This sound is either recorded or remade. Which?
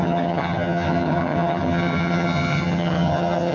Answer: remade